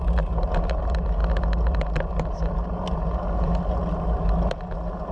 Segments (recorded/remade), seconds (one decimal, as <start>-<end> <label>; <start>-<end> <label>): 0.0-5.1 recorded